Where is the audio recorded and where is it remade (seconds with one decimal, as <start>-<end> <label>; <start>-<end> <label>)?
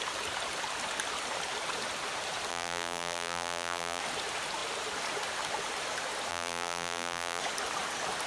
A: 0.0-2.5 recorded; 2.5-4.0 remade; 4.0-6.3 recorded; 6.3-7.4 remade; 7.4-8.3 recorded